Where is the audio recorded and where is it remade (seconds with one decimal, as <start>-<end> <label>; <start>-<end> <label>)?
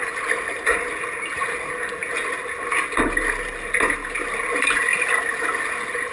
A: 0.0-6.1 recorded